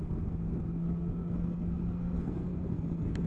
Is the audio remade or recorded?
remade